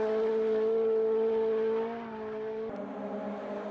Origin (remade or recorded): recorded